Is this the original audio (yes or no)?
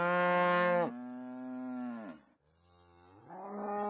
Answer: yes